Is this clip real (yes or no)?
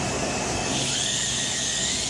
no